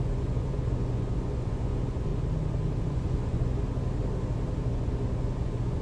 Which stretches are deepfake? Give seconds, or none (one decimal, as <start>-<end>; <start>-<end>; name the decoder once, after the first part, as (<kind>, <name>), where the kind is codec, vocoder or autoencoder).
0.0-2.1 (vocoder, Vocos); 2.8-3.7; 4.7-5.8